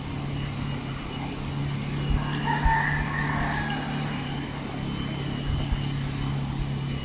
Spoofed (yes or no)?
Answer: no